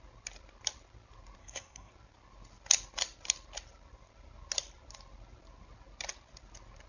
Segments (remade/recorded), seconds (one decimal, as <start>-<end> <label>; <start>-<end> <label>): 0.0-1.4 recorded; 1.4-1.9 remade; 1.9-6.9 recorded

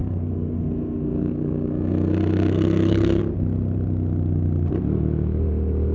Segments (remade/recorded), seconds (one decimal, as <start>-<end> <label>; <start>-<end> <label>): 0.0-3.2 remade; 3.2-5.9 recorded

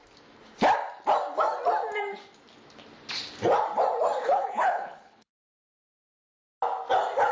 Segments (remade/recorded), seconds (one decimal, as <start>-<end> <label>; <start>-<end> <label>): 0.0-4.2 recorded; 4.2-6.2 remade; 6.2-7.3 recorded

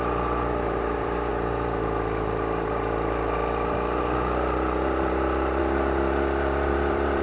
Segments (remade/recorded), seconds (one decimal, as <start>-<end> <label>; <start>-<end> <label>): 0.0-1.3 remade; 1.3-5.6 recorded; 5.6-7.2 remade

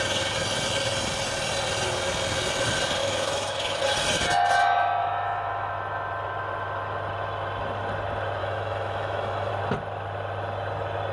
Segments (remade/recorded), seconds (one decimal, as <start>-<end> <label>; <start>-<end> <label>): 0.0-3.0 recorded; 3.0-3.8 remade; 3.8-5.0 recorded; 5.0-5.7 remade; 5.7-8.4 recorded; 8.4-9.5 remade; 9.5-11.1 recorded

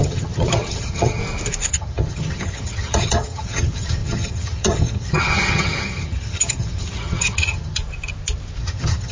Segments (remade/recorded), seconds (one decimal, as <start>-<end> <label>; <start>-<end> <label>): 0.0-1.2 remade; 1.2-1.7 recorded; 1.7-7.8 remade; 7.8-8.6 recorded; 8.6-9.1 remade

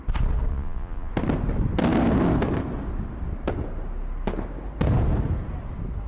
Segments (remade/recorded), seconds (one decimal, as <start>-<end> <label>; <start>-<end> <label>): 0.0-0.5 recorded; 0.5-1.1 remade; 1.1-6.1 recorded